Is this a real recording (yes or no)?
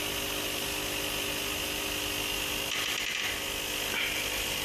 yes